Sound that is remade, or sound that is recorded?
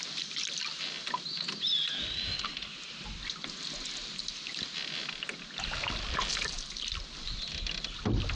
recorded